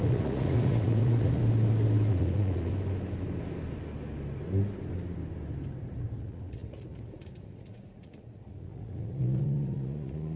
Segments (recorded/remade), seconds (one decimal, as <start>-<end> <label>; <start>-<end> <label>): 0.0-1.4 remade; 1.4-2.1 recorded; 2.1-2.7 remade; 2.7-5.9 recorded; 5.9-10.4 remade